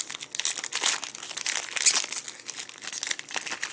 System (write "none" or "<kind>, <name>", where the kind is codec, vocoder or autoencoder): none